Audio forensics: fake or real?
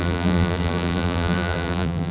fake